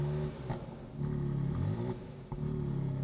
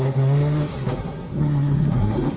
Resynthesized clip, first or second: second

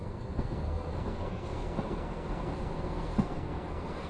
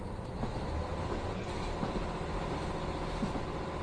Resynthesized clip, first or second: first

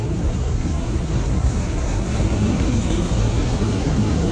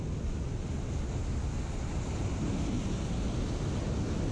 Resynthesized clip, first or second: first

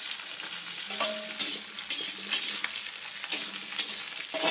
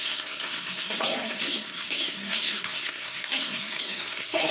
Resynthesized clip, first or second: second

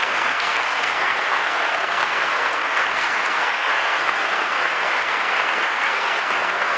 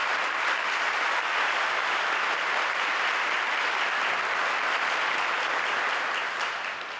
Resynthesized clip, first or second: first